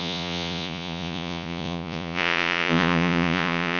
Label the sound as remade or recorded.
remade